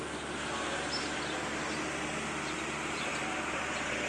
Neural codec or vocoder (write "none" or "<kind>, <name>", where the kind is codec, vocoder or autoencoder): none